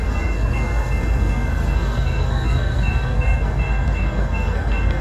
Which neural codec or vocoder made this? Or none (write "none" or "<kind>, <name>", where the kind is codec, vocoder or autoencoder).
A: codec, SNAC